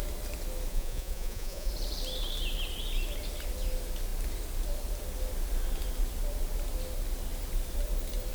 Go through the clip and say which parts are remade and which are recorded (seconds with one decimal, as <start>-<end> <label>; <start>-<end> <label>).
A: 0.0-0.7 recorded; 0.7-1.7 remade; 1.7-8.3 recorded